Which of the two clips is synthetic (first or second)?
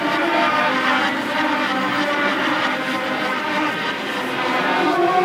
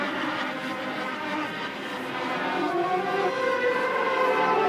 first